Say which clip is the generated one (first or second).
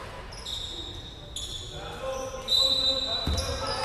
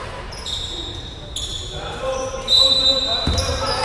second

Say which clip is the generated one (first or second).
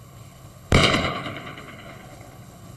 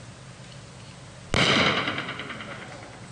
first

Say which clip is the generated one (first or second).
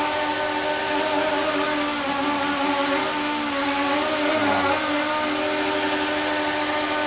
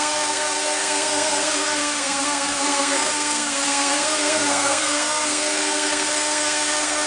second